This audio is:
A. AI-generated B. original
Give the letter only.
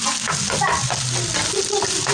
B